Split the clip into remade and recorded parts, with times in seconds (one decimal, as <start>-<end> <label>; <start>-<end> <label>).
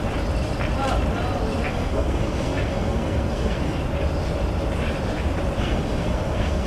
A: 0.0-1.7 recorded; 1.7-3.8 remade; 3.8-5.6 recorded; 5.6-6.7 remade